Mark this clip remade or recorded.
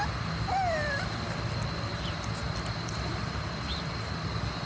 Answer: recorded